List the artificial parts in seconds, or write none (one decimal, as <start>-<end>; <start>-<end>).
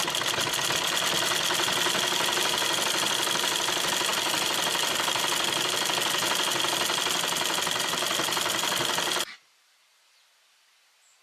4.1-5.1